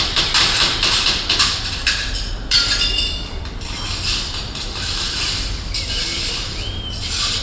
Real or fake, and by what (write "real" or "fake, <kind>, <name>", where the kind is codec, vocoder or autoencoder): fake, vocoder, BigVGAN v2